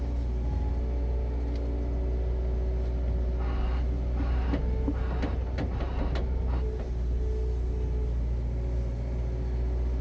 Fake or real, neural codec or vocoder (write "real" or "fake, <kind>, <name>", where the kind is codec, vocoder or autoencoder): real